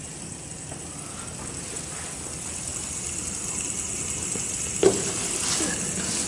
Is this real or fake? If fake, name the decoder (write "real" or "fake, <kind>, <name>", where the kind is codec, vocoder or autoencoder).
real